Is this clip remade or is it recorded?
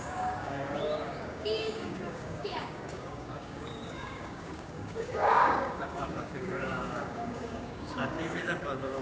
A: remade